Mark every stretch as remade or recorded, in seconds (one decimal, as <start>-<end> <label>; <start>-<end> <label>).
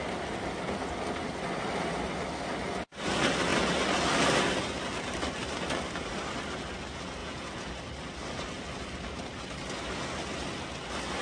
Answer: 0.0-7.2 recorded; 7.2-7.7 remade; 7.7-11.2 recorded